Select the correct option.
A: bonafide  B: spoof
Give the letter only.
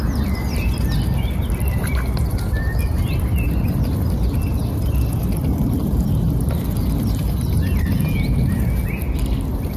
A